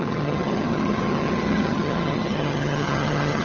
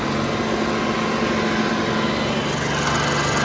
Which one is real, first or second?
second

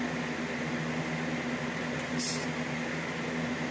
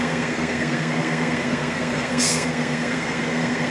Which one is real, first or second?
first